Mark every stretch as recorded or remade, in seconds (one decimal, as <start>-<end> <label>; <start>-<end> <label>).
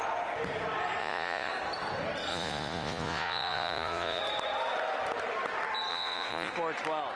0.0-1.0 recorded; 1.0-1.5 remade; 1.5-2.3 recorded; 2.3-4.2 remade; 4.2-5.9 recorded; 5.9-6.5 remade; 6.5-7.2 recorded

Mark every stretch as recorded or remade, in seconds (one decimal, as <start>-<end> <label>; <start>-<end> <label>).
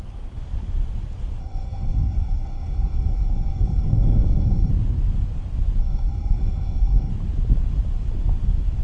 0.0-1.4 recorded; 1.4-4.7 remade; 4.7-5.8 recorded; 5.8-7.1 remade; 7.1-8.8 recorded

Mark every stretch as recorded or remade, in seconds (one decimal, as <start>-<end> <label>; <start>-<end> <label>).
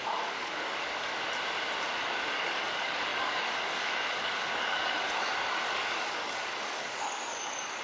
0.0-1.1 remade; 1.1-2.0 recorded; 2.0-7.8 remade